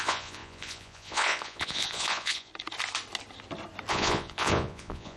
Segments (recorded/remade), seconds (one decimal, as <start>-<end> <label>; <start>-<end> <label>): 0.0-2.5 remade; 2.5-3.9 recorded; 3.9-5.2 remade